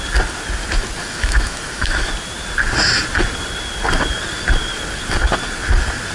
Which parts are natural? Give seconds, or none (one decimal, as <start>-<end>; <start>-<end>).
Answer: 0.0-1.0; 2.1-6.1